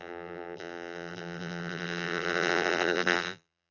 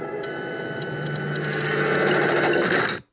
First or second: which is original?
second